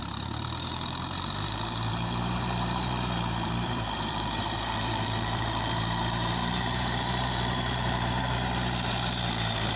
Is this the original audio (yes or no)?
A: no